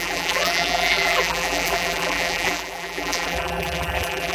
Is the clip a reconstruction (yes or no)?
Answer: yes